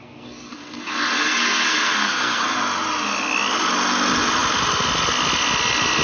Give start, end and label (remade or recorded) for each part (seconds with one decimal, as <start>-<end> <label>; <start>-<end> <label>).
0.0-2.4 remade; 2.4-6.0 recorded